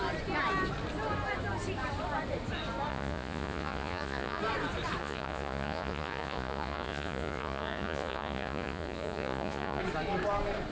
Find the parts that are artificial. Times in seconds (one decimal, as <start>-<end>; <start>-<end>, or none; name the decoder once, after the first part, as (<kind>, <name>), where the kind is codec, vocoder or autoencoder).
2.9-4.4 (vocoder, Vocos); 5.0-9.8